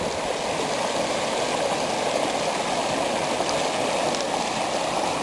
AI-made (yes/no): no